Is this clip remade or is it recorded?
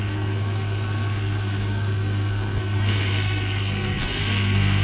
remade